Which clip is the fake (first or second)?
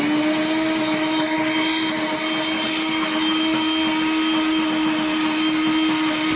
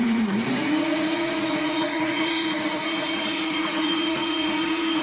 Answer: second